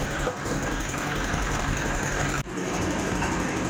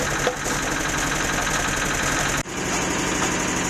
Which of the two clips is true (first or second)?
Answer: second